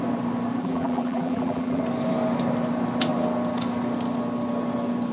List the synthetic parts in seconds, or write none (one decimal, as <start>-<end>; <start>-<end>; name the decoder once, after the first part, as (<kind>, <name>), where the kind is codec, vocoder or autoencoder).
0.6-1.8 (vocoder, BigVGAN v2)